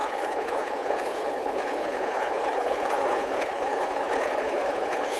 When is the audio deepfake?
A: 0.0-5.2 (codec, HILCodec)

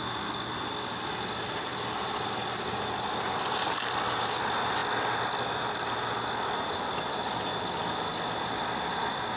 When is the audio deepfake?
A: none

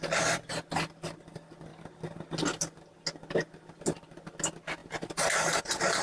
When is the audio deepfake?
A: 4.8-5.6 (vocoder, BigVGAN v2)

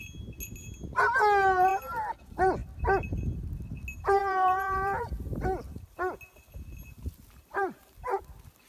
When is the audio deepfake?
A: 4.2-5.4 (vocoder, BigVGAN v2)

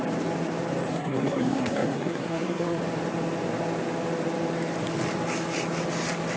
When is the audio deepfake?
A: 0.9-2.8 (codec, SNAC)

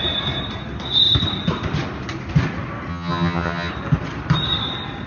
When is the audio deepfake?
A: 2.9-3.7 (vocoder, HiFi-GAN)